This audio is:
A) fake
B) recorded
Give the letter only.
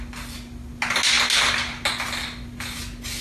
B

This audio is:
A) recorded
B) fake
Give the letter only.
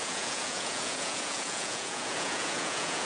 B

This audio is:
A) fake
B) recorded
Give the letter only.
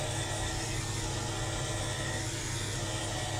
B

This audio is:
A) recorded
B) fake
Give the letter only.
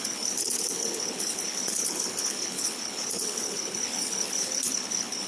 B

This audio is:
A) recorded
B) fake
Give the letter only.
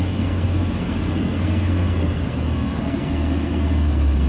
B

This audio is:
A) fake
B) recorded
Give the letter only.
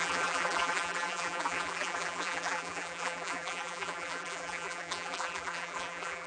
A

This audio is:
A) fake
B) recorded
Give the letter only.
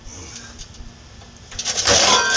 A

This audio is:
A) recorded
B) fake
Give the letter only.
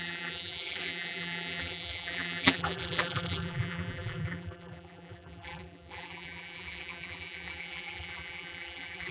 B